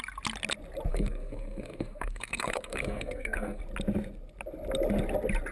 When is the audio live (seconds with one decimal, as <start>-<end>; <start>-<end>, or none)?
0.0-0.9; 3.6-5.5